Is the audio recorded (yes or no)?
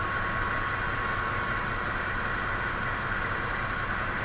yes